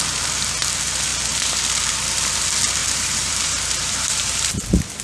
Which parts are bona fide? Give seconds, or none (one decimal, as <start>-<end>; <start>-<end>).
0.0-2.8; 4.5-5.0